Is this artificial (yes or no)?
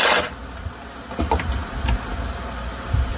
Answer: no